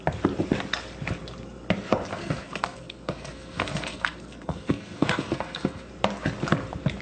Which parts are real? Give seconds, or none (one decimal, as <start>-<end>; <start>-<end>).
0.0-2.1; 5.9-7.0